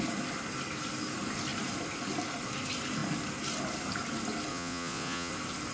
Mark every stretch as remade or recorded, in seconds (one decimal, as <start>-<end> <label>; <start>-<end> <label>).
0.0-4.5 recorded; 4.5-5.3 remade; 5.3-5.7 recorded